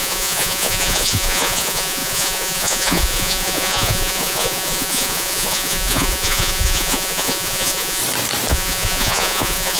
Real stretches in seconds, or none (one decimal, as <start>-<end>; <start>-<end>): 8.0-8.5